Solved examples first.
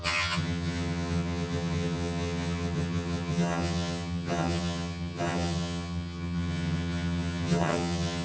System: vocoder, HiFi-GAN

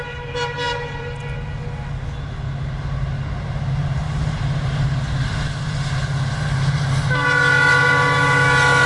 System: none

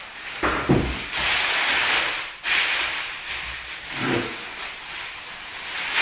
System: none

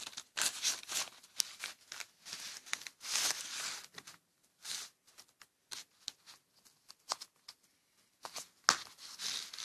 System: none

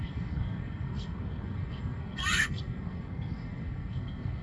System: codec, SNAC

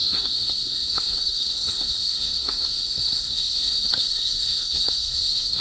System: codec, SNAC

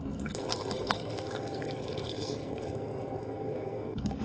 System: codec, SNAC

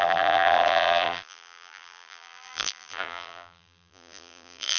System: vocoder, BigVGAN v2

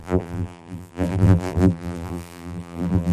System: vocoder, BigVGAN v2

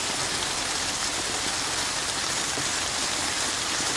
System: none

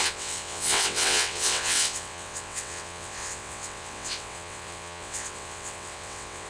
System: vocoder, WaveNeXt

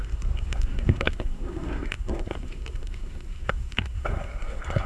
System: codec, SNAC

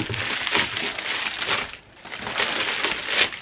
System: none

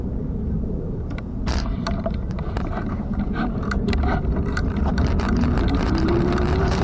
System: vocoder, BigVGAN v2